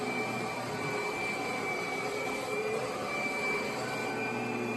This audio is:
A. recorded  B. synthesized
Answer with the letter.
B